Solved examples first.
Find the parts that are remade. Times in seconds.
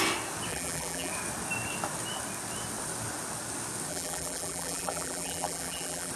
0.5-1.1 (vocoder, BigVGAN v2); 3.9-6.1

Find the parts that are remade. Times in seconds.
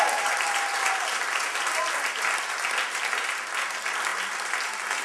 none